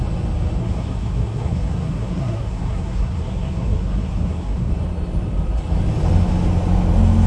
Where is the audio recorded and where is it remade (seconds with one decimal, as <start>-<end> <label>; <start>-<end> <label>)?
0.0-0.6 recorded; 0.6-4.7 remade; 4.7-7.3 recorded